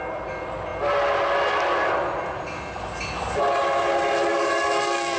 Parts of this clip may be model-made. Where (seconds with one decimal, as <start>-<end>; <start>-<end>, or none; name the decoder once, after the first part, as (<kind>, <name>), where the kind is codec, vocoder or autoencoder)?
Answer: 4.3-5.2 (codec, DAC)